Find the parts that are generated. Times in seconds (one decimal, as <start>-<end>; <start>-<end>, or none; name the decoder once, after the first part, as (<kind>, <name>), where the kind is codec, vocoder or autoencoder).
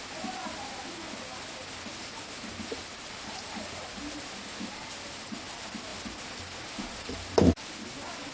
1.9-4.0 (vocoder, BigVGAN v2)